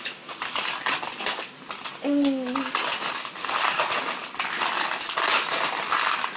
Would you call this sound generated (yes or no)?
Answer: no